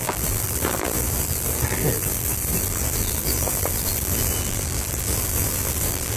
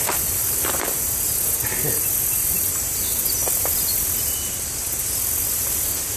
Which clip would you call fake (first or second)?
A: first